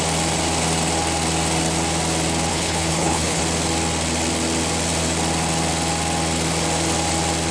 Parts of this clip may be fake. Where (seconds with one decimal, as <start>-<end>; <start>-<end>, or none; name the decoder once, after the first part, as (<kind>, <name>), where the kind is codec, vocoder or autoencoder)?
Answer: 2.5-3.4 (codec, HILCodec)